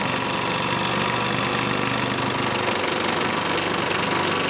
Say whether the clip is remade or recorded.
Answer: recorded